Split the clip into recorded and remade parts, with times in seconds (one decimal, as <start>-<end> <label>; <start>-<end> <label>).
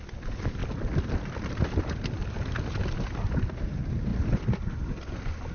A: 0.0-5.5 recorded